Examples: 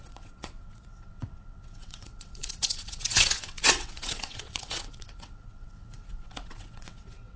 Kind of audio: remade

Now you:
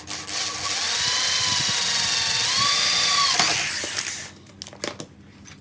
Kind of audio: recorded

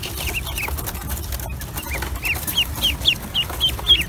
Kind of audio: recorded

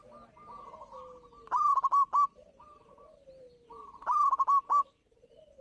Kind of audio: recorded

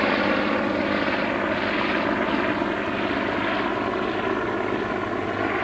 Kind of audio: recorded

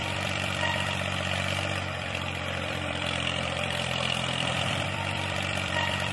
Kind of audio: remade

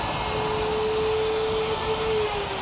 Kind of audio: recorded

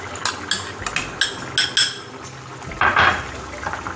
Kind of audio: recorded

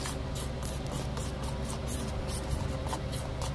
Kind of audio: recorded